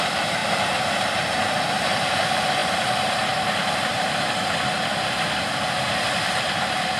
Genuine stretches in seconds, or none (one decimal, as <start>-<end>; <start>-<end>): none